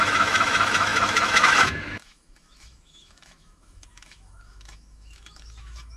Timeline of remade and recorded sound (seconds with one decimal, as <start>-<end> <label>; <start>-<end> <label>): 0.0-6.0 remade